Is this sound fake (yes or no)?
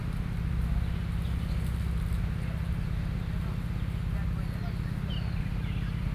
no